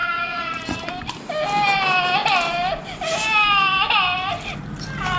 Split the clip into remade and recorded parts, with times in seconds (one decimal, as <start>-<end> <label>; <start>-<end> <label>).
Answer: 0.0-0.9 remade; 0.9-5.2 recorded